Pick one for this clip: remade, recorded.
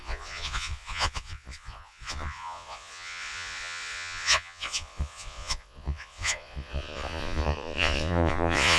remade